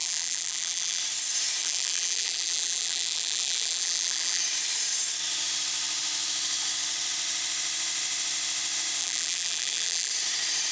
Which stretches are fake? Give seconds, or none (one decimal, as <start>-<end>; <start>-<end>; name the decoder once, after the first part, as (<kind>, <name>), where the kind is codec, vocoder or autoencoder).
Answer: 0.0-1.0 (vocoder, BigVGAN v2); 1.6-4.4; 9.0-10.1